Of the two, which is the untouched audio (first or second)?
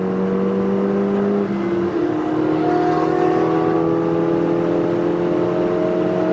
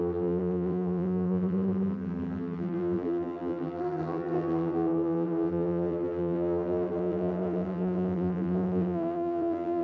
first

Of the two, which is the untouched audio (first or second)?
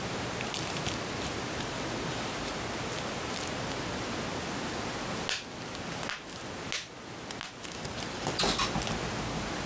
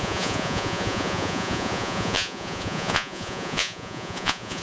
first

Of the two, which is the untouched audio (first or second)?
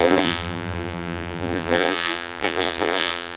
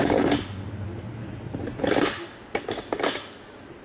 second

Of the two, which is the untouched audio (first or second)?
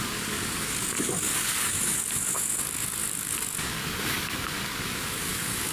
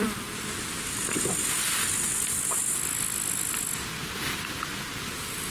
second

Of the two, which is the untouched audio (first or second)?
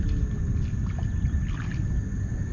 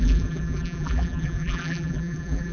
first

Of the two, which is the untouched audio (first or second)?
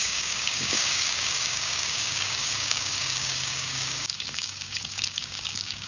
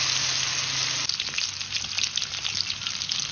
second